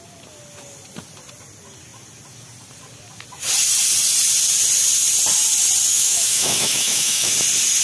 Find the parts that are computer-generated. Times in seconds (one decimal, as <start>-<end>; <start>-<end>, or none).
5.9-7.3